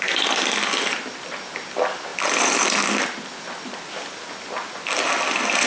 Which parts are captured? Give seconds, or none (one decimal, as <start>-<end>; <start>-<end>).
0.0-5.7